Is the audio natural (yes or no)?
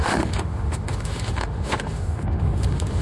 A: no